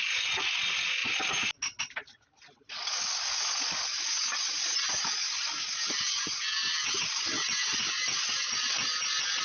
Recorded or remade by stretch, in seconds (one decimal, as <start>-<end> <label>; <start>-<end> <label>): 0.0-9.4 recorded